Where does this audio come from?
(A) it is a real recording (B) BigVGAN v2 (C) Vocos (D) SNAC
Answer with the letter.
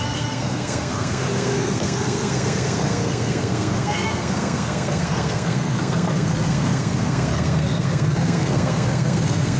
D